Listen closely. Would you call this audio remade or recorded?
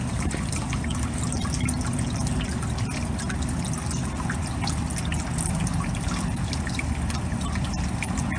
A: recorded